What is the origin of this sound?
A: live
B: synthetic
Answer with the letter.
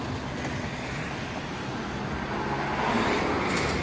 A